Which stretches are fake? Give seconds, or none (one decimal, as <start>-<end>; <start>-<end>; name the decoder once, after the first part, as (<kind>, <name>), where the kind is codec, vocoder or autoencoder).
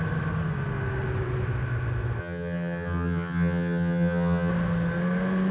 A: 2.2-4.5 (vocoder, HiFi-GAN)